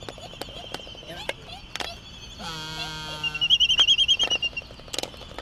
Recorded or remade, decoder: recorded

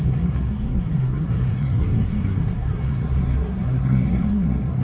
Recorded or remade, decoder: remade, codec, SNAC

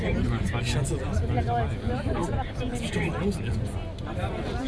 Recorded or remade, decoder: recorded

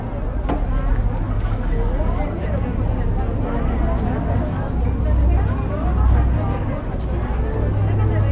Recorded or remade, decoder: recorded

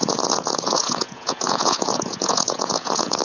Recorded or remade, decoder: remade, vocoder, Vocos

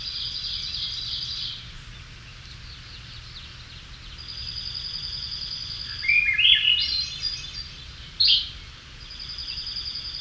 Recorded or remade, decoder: recorded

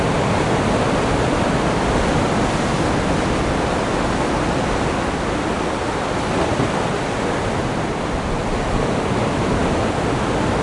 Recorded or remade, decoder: recorded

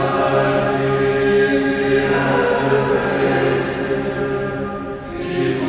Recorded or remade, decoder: recorded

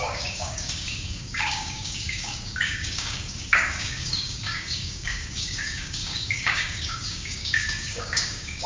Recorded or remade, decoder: remade, codec, DAC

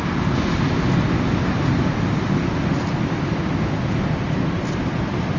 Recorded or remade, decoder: recorded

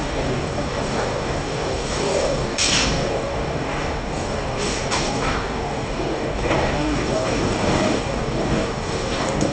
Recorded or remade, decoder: remade, codec, DAC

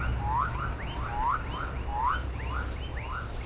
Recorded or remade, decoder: recorded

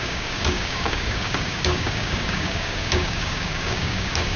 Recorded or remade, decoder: remade, codec, DAC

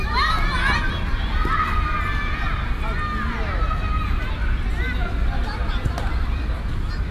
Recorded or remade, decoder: recorded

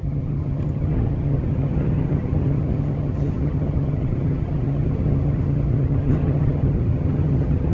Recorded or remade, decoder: remade, vocoder, HiFi-GAN